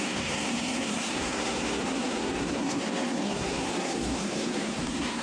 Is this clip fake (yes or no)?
yes